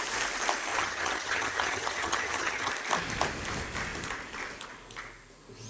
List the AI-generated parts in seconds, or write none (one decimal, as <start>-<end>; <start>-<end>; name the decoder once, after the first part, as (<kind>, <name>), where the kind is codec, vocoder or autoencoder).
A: 0.7-2.7 (vocoder, HiFi-GAN)